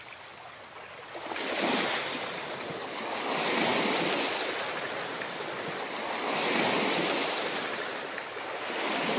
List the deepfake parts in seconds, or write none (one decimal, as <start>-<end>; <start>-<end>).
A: none